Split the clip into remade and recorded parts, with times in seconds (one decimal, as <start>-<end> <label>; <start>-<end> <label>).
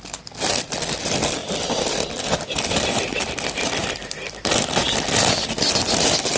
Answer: 0.0-6.4 recorded